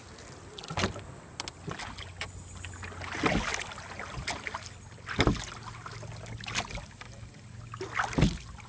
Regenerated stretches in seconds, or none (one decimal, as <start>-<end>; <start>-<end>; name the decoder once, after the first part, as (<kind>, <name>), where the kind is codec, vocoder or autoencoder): none

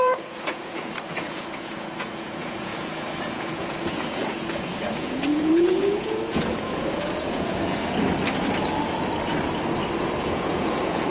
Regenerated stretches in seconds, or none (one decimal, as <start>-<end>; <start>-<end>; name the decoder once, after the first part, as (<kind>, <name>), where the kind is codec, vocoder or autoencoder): 0.0-7.8 (vocoder, Vocos); 10.2-11.1

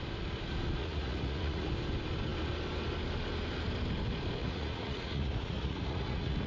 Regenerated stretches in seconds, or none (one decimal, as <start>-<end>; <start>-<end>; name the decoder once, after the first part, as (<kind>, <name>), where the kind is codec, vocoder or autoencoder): 0.8-1.7 (vocoder, Vocos); 4.4-6.5

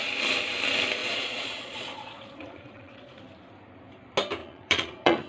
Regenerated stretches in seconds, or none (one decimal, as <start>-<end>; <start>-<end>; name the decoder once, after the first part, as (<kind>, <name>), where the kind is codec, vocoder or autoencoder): 1.0-3.2 (vocoder, Vocos); 4.4-5.3

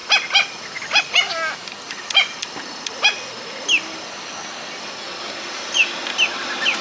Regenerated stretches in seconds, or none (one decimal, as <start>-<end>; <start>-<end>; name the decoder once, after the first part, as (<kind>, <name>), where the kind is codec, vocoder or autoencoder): none

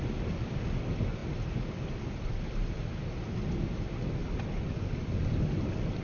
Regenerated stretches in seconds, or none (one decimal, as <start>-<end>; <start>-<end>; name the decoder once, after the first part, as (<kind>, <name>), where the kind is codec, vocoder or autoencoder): 4.2-4.9 (vocoder, BigVGAN v2)

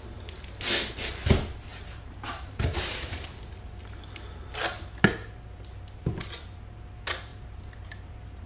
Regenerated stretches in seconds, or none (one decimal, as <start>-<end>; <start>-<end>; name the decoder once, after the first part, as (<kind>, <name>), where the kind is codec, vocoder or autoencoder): 1.7-3.5 (vocoder, BigVGAN v2)

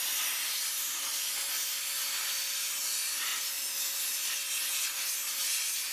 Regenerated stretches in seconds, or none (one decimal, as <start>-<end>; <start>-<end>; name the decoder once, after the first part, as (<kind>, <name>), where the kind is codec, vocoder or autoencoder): none